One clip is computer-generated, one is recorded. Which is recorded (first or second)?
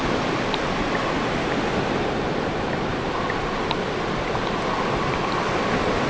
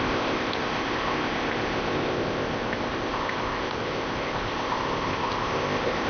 first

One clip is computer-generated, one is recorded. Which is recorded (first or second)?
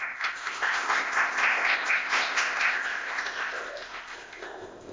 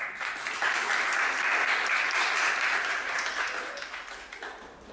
second